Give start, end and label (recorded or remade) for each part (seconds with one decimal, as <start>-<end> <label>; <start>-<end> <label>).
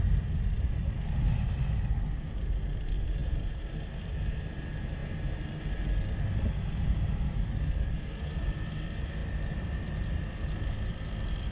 0.0-11.5 recorded